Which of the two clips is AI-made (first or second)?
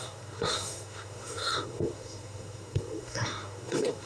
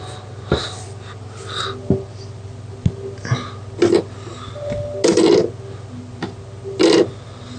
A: first